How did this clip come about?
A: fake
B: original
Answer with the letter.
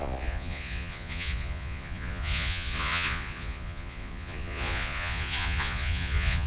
A